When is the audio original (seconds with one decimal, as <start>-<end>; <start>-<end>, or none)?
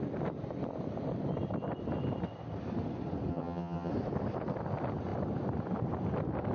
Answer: 0.0-3.3; 3.9-6.5